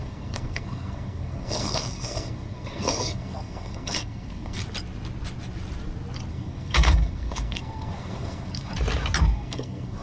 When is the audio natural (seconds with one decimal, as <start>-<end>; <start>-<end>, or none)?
4.6-6.3; 8.7-9.2